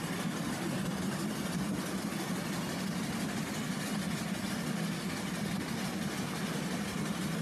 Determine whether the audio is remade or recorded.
recorded